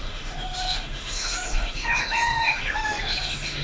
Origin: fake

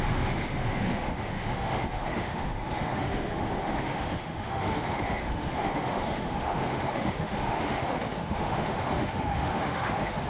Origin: fake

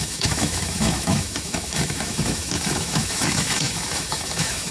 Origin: fake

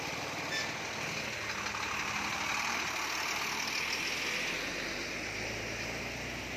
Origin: real